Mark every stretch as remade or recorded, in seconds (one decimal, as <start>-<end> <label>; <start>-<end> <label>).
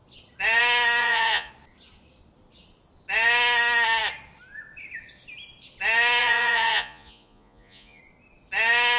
0.0-1.0 recorded; 1.0-1.5 remade; 1.5-6.2 recorded; 6.2-8.0 remade; 8.0-9.0 recorded